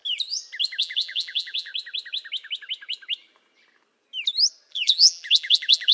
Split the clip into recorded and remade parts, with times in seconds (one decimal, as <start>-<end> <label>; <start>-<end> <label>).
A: 0.0-0.8 recorded; 0.8-1.7 remade; 1.7-4.7 recorded; 4.7-5.9 remade

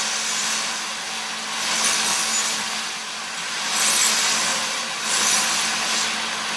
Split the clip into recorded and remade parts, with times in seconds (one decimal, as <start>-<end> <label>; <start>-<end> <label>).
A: 0.0-0.4 recorded; 0.4-1.1 remade; 1.1-2.1 recorded; 2.1-3.9 remade; 3.9-4.5 recorded; 4.5-5.4 remade; 5.4-6.6 recorded